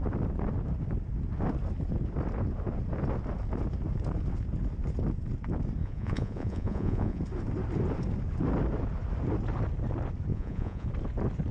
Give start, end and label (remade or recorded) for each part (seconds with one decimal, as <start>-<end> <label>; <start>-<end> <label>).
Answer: 0.0-5.8 recorded; 5.8-7.2 remade; 7.2-10.3 recorded; 10.3-10.9 remade; 10.9-11.5 recorded